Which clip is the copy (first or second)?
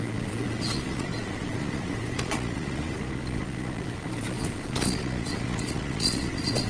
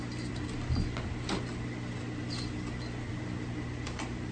first